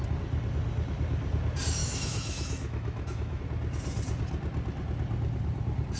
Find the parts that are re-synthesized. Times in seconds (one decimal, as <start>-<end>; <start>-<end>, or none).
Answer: 1.8-3.4